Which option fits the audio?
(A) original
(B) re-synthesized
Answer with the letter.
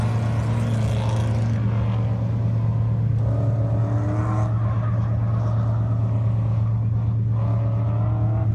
A